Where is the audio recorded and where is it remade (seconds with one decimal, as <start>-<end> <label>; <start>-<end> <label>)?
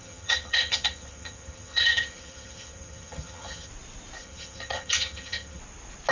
0.0-3.7 remade; 3.7-4.2 recorded; 4.2-5.6 remade; 5.6-6.1 recorded